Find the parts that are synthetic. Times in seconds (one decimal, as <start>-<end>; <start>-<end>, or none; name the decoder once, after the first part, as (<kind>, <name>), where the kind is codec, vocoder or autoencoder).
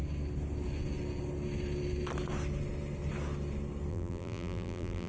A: 3.9-5.1 (vocoder, BigVGAN v2)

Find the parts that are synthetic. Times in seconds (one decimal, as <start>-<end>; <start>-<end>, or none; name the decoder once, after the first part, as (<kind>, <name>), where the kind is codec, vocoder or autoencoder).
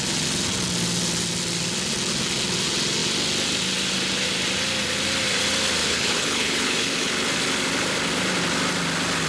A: 5.8-7.1 (codec, HILCodec)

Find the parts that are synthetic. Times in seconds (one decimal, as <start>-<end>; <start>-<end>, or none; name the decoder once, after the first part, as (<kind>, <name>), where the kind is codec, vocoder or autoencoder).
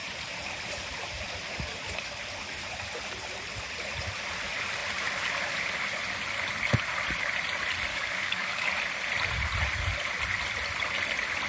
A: 7.9-8.7 (codec, DAC)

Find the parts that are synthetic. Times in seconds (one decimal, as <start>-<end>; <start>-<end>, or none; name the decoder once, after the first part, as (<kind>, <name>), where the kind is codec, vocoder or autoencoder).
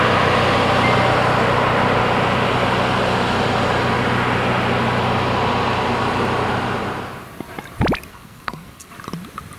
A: 8.1-8.9 (codec, SNAC)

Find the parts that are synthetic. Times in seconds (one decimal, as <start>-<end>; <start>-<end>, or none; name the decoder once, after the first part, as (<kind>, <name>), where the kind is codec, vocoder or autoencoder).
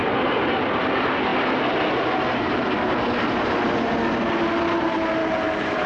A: 5.2-5.9 (vocoder, BigVGAN v2)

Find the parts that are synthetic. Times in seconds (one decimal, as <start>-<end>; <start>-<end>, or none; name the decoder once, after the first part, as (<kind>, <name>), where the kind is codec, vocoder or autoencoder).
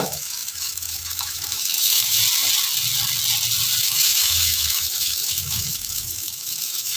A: 0.0-2.2 (autoencoder, DAC-VAE); 3.8-7.0